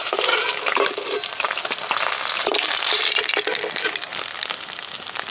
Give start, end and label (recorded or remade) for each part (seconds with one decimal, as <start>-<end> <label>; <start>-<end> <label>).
0.0-3.2 remade; 3.2-5.3 recorded